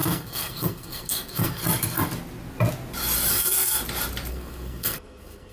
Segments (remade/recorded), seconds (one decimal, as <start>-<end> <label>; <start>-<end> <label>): 0.0-1.6 remade; 1.6-3.3 recorded; 3.3-3.8 remade; 3.8-4.3 recorded; 4.3-5.5 remade